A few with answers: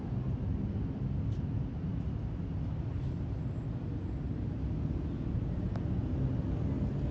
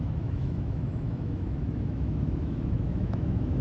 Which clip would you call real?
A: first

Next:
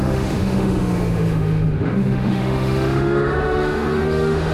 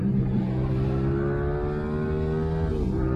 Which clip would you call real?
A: second